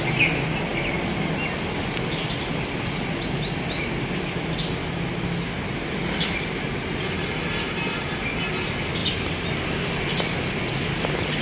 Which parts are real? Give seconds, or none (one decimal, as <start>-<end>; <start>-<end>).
0.0-11.4